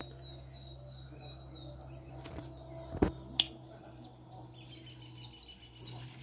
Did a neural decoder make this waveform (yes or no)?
no